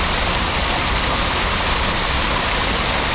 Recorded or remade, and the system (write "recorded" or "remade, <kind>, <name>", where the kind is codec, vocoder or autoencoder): recorded